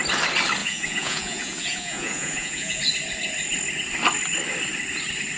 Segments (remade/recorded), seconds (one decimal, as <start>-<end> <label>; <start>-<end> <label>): 0.0-0.6 recorded; 0.6-2.8 remade; 2.8-5.4 recorded